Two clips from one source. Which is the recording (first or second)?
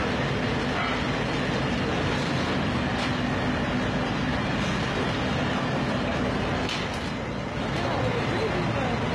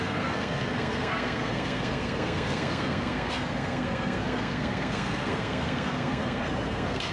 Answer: first